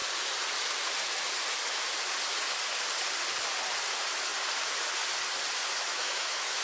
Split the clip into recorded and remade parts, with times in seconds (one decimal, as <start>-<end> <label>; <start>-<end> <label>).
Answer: 0.0-5.9 recorded; 5.9-6.6 remade